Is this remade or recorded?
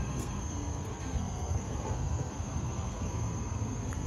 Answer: remade